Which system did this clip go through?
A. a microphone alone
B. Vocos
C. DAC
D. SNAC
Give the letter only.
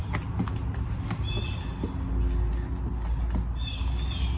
A